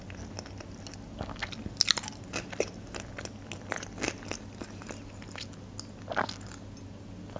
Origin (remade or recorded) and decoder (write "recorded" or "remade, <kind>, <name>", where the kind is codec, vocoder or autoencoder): recorded